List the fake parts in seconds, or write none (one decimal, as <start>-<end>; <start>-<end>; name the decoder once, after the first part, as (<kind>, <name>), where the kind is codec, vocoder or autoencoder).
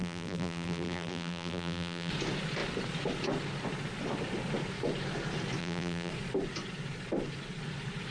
0.0-2.1 (vocoder, BigVGAN v2); 5.6-6.1